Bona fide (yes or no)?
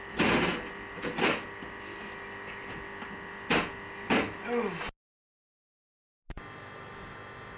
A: yes